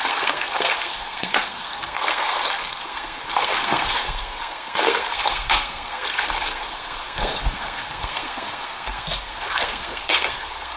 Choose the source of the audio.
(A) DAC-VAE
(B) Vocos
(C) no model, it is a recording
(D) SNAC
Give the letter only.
D